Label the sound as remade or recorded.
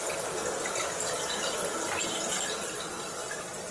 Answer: recorded